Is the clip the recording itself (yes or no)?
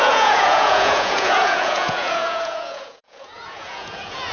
no